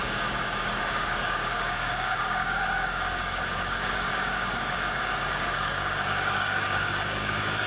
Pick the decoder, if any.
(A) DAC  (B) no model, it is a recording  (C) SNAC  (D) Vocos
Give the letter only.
A